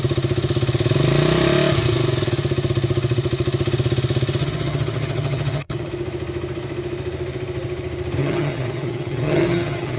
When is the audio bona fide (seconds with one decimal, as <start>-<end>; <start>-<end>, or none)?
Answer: 0.0-4.4; 5.9-8.2